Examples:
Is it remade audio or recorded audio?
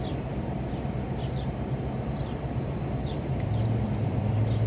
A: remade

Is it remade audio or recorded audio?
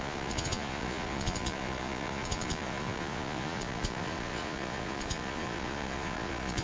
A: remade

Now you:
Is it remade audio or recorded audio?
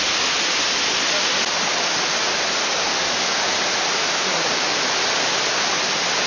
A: recorded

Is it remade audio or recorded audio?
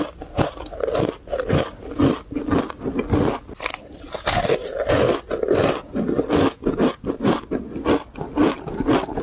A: recorded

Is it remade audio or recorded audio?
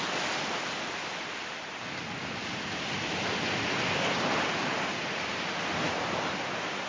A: recorded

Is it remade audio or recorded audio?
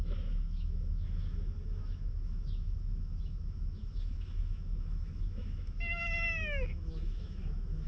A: remade